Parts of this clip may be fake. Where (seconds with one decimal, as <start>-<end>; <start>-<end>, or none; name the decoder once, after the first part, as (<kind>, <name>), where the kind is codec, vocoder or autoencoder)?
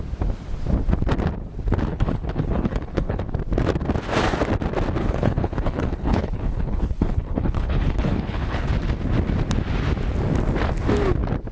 1.9-3.2 (codec, HILCodec); 5.0-8.7